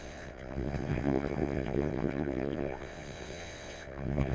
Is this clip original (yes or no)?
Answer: no